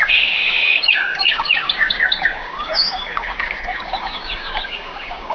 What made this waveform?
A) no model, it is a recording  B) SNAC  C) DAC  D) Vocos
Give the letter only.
C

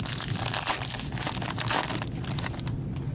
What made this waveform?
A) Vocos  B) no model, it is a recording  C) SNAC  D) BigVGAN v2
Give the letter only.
B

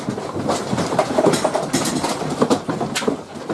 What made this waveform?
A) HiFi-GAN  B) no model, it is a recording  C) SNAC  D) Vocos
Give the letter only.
B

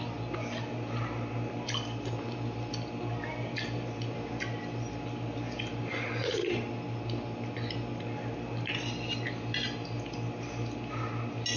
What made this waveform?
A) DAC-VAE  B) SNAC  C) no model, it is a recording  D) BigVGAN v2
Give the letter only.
C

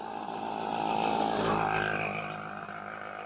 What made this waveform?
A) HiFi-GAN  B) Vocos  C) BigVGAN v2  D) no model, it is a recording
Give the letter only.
D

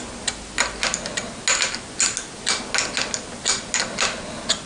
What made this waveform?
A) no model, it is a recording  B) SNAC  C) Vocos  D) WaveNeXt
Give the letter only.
A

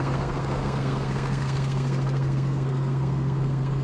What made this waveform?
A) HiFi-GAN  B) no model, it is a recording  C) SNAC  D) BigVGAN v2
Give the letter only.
C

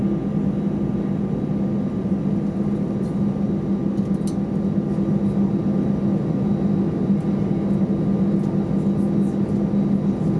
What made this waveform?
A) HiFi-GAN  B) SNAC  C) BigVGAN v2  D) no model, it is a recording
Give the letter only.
D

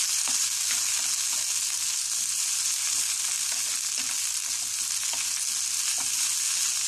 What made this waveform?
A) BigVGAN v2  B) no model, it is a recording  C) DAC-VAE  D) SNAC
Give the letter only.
B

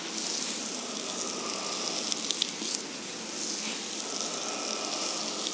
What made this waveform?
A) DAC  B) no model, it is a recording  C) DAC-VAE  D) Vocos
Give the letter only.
B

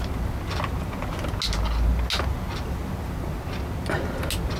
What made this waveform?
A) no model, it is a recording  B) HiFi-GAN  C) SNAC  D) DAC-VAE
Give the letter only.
A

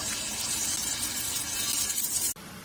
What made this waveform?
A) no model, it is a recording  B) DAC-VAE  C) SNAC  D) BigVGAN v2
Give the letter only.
A